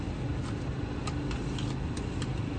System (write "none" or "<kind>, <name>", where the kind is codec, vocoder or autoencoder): none